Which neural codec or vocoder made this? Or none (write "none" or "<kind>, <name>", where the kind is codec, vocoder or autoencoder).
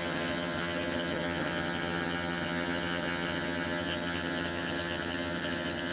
vocoder, HiFi-GAN